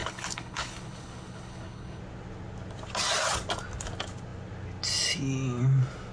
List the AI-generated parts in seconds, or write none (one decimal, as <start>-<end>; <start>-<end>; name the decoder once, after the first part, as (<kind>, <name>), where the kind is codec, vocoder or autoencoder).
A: 0.0-2.0 (codec, HILCodec)